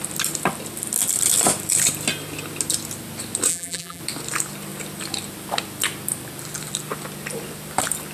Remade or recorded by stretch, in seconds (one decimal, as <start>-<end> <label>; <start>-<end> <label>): 0.0-3.5 recorded; 3.5-4.0 remade; 4.0-8.1 recorded